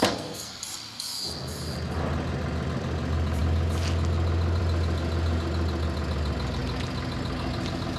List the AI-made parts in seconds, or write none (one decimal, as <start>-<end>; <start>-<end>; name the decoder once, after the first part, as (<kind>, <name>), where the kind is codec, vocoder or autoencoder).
0.0-0.6 (codec, SNAC)